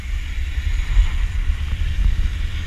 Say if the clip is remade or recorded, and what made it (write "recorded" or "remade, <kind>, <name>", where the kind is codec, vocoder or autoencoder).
recorded